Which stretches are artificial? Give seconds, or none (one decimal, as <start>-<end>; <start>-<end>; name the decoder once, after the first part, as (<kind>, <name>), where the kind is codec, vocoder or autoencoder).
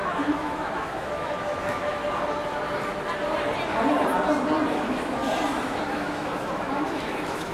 0.0-2.0 (autoencoder, DAC-VAE); 4.7-5.2; 5.9-7.5